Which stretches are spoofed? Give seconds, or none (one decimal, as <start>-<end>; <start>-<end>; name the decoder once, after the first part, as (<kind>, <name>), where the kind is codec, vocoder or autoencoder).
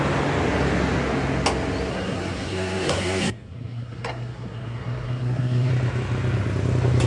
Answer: 1.9-5.7 (codec, SNAC)